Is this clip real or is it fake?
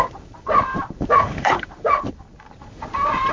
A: fake